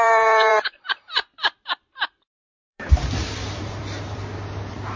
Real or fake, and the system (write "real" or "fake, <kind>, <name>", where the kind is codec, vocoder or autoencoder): fake, vocoder, BigVGAN v2